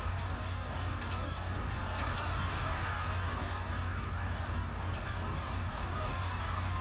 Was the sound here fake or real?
fake